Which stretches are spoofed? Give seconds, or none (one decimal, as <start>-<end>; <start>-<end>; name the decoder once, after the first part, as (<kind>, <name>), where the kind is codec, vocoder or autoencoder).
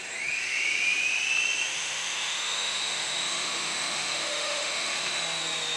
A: 1.7-5.2 (autoencoder, DAC-VAE)